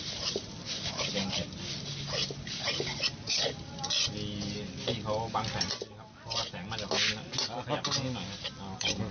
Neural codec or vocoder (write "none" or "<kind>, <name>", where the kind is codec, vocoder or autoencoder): none